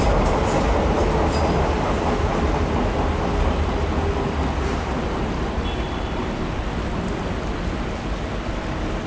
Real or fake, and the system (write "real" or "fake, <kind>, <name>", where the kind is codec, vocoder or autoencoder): real